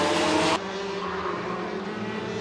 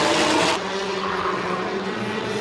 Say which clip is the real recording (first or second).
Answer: first